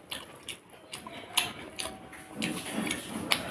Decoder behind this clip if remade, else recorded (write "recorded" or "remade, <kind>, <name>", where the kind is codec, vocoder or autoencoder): recorded